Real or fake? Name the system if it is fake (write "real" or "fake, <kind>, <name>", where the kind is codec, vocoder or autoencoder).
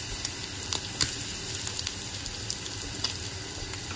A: real